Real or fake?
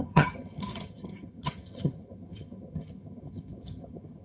fake